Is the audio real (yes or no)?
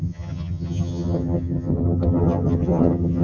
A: no